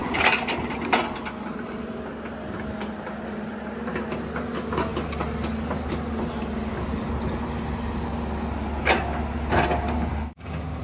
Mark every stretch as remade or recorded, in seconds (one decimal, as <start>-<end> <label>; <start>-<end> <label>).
0.0-10.1 recorded; 10.1-10.8 remade